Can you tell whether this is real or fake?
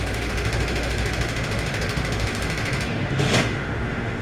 fake